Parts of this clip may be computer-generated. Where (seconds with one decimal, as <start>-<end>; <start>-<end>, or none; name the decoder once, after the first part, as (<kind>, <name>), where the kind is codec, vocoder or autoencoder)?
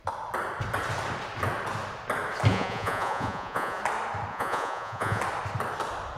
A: 2.5-3.8 (vocoder, Vocos); 4.3-5.2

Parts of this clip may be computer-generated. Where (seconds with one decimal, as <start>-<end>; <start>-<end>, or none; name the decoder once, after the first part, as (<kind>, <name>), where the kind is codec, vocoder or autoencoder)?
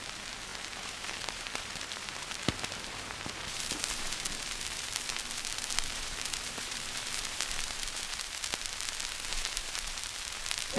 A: 0.5-5.2 (vocoder, BigVGAN v2); 5.9-8.2; 9.3-10.0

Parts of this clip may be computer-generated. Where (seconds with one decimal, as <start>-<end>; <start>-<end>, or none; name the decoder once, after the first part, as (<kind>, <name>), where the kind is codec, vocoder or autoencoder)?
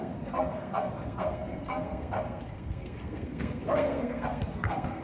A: 0.0-5.0 (codec, SNAC)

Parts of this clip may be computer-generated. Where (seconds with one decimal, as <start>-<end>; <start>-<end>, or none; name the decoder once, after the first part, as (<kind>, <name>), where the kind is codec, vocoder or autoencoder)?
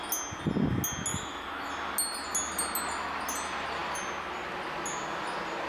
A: 1.1-1.7 (autoencoder, DAC-VAE)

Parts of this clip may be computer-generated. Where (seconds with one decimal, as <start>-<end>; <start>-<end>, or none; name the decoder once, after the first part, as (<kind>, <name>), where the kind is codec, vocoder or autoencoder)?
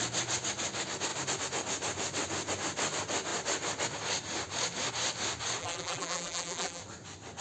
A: 5.6-6.8 (vocoder, BigVGAN v2)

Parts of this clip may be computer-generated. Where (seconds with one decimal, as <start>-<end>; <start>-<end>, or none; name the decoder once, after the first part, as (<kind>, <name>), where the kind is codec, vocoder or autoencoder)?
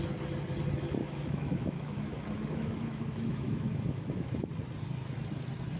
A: 1.0-4.5 (autoencoder, DAC-VAE)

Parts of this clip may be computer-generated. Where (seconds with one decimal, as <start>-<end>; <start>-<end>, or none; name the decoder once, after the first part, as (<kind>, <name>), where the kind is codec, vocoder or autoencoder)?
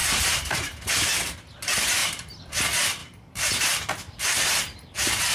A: 0.0-0.8 (vocoder, BigVGAN v2); 2.0-2.6; 3.0-3.6